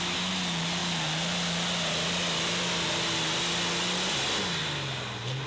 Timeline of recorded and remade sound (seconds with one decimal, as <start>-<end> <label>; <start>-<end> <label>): 0.0-5.5 recorded